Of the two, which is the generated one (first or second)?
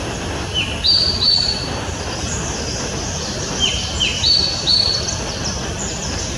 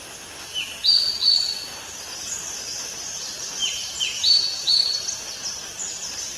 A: first